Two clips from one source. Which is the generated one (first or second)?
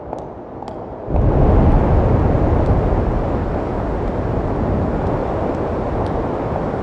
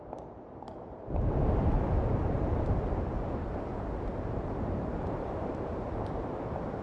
second